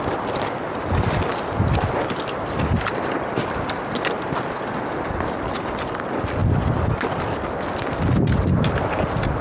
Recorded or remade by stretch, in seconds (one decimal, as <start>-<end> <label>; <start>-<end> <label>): 0.0-9.4 recorded